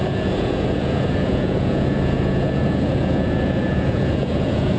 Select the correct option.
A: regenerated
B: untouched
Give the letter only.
A